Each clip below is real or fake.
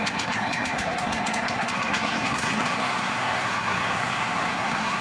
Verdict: fake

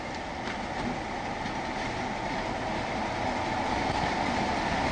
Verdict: real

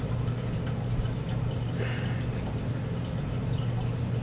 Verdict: real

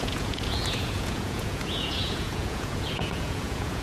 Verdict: fake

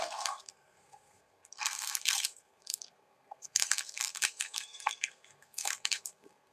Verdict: fake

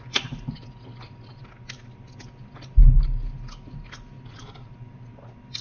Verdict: real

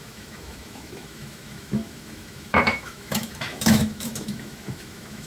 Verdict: fake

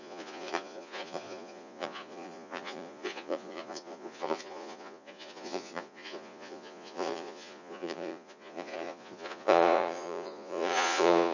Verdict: fake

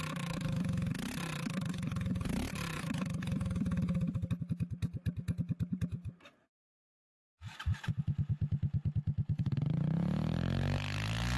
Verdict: real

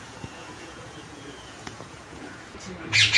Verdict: fake